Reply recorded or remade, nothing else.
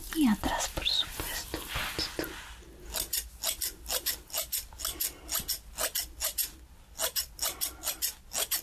recorded